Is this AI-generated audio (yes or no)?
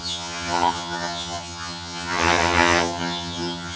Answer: yes